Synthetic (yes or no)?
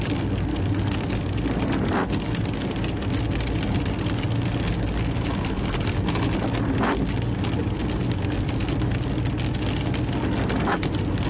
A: no